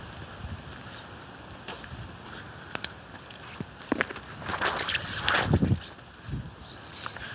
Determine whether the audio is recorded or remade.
recorded